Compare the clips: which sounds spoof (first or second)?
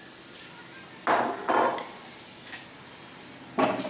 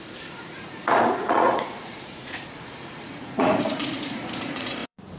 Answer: second